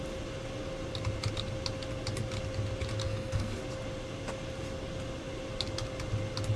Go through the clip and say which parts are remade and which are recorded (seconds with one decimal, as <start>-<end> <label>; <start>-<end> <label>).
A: 0.0-3.0 recorded; 3.0-3.6 remade; 3.6-6.6 recorded